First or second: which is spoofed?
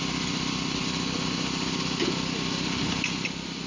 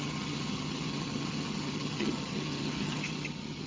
second